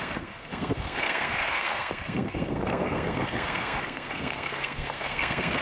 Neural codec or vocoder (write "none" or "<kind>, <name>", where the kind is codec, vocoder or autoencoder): codec, SNAC